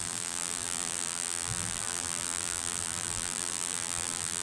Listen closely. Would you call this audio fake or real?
fake